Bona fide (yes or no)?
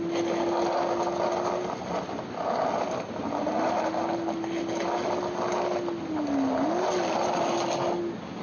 yes